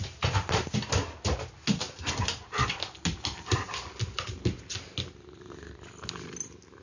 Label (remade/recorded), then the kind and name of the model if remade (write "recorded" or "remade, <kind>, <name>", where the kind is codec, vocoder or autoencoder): recorded